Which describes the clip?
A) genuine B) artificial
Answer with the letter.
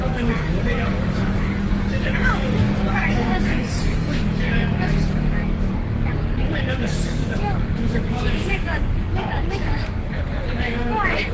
B